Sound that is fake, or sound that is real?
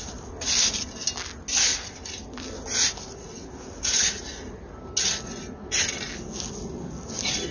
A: real